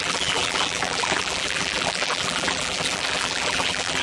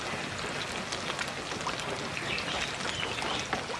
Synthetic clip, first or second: first